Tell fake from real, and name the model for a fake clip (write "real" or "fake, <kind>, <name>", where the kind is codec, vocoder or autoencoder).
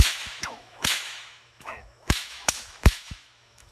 fake, autoencoder, DAC-VAE